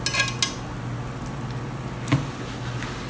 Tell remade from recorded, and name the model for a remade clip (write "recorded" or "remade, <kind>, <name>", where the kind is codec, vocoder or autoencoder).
recorded